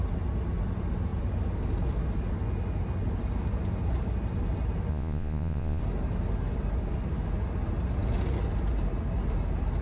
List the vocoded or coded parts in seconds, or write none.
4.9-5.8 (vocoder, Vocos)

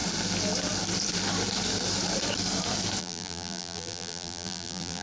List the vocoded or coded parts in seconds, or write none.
3.0-5.0 (vocoder, BigVGAN v2)

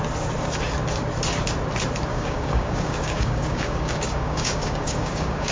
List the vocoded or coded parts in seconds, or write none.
2.1-5.5 (codec, DAC)

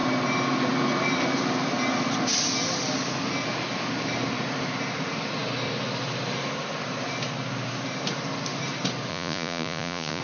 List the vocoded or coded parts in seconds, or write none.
9.1-10.2 (vocoder, Vocos)